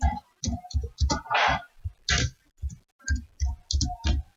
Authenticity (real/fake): real